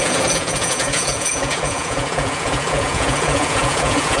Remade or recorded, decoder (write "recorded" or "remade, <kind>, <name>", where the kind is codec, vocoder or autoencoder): remade, vocoder, Vocos